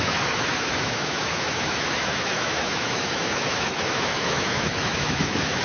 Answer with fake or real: fake